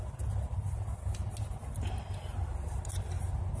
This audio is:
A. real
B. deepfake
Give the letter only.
A